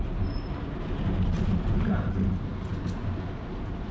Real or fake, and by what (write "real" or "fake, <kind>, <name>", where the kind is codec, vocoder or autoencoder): real